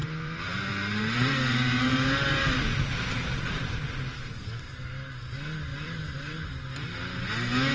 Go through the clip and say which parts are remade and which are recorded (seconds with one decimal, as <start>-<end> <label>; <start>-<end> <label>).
0.0-4.3 remade; 4.3-5.7 recorded; 5.7-7.3 remade; 7.3-7.7 recorded

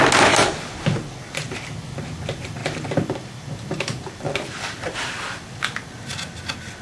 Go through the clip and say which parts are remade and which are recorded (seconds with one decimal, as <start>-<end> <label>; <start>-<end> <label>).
0.0-2.6 recorded; 2.6-5.6 remade; 5.6-6.8 recorded

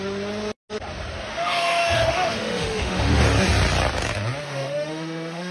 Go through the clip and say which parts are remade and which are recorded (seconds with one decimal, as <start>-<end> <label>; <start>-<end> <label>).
0.0-1.3 recorded; 1.3-3.2 remade; 3.2-4.4 recorded; 4.4-5.5 remade

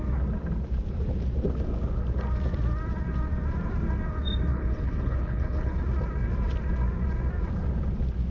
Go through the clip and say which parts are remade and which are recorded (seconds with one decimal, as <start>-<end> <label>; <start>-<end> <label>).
0.0-4.5 recorded; 4.5-5.8 remade; 5.8-8.3 recorded

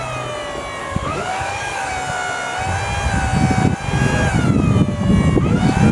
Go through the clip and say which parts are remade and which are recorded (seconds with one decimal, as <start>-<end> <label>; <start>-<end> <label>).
0.0-0.8 recorded; 0.8-1.9 remade; 1.9-5.9 recorded